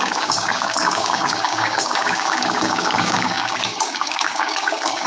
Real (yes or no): no